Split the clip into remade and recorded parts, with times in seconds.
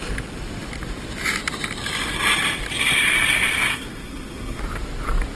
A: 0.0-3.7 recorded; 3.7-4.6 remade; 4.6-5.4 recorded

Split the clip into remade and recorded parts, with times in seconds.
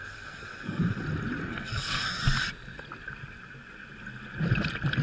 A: 0.0-0.8 remade; 0.8-1.4 recorded; 1.4-2.2 remade; 2.2-5.0 recorded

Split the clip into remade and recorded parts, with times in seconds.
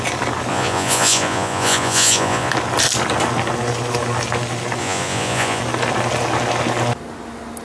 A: 0.0-0.5 recorded; 0.5-2.5 remade; 2.5-4.8 recorded; 4.8-5.6 remade; 5.6-7.6 recorded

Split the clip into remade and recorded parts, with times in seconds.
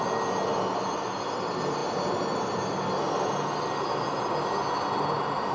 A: 0.0-5.5 recorded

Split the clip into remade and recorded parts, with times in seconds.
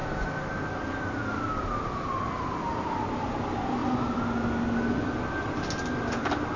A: 0.0-6.6 recorded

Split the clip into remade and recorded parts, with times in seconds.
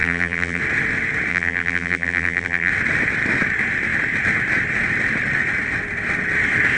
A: 0.0-0.6 remade; 0.6-1.3 recorded; 1.3-2.7 remade; 2.7-6.8 recorded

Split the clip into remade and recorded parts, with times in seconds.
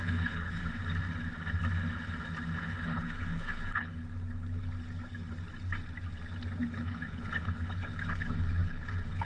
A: 0.0-0.6 remade; 0.6-2.6 recorded; 2.6-4.0 remade; 4.0-6.7 recorded; 6.7-9.2 remade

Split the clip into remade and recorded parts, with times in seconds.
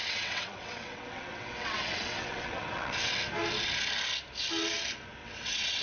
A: 0.0-3.1 remade; 3.1-5.2 recorded; 5.2-5.8 remade